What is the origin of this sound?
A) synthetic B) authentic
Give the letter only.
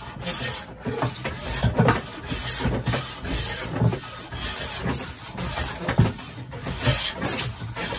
B